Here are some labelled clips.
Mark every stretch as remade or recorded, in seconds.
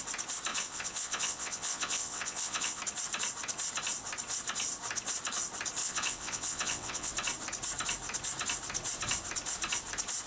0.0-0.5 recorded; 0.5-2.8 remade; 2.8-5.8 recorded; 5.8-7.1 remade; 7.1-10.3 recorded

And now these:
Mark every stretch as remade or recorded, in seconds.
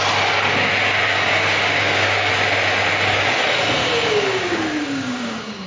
0.0-1.1 recorded; 1.1-2.3 remade; 2.3-2.9 recorded; 2.9-3.4 remade; 3.4-3.8 recorded; 3.8-5.7 remade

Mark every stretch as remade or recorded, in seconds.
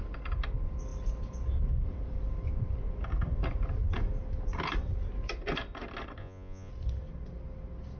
0.0-6.2 recorded; 6.2-6.7 remade; 6.7-8.0 recorded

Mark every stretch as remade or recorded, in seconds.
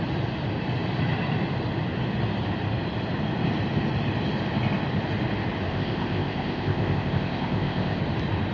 0.0-5.7 recorded; 5.7-8.0 remade; 8.0-8.5 recorded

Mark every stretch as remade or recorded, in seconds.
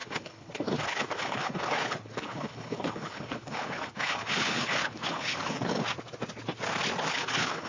0.0-5.7 remade; 5.7-7.1 recorded; 7.1-7.7 remade